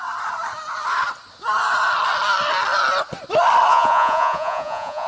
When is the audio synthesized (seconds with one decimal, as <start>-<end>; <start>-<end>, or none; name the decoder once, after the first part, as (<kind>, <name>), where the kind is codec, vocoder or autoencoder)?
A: 3.7-5.1 (vocoder, Vocos)